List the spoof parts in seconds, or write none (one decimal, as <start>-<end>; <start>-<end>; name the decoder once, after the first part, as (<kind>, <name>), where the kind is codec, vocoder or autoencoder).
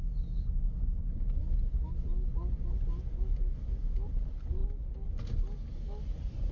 none